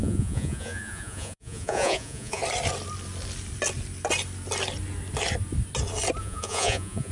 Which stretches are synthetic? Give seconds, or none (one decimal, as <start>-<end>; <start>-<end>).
0.0-2.4; 6.2-7.1